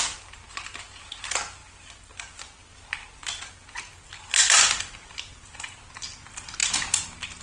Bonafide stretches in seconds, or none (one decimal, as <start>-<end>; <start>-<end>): 0.0-7.4